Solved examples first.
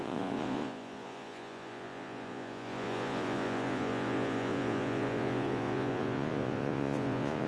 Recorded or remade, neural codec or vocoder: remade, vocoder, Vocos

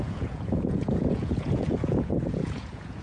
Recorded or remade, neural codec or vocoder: remade, vocoder, Vocos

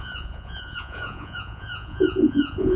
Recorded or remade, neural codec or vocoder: remade, vocoder, Vocos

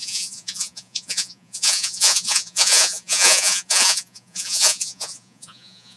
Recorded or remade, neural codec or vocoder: remade, vocoder, Vocos